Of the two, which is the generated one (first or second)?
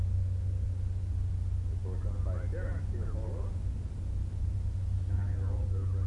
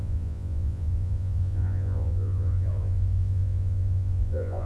second